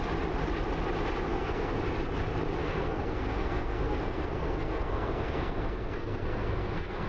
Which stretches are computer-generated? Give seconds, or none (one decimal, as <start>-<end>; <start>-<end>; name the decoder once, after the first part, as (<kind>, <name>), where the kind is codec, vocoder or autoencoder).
1.3-1.8 (codec, SNAC); 2.6-7.1